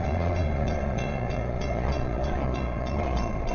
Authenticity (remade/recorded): remade